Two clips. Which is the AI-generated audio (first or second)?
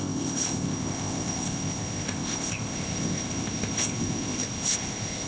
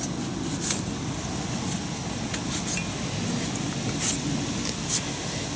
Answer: first